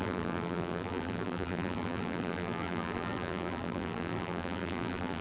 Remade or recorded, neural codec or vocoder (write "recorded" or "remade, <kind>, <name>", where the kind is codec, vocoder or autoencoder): remade, vocoder, BigVGAN v2